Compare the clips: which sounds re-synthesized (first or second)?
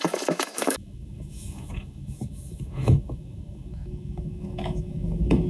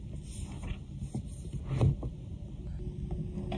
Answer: first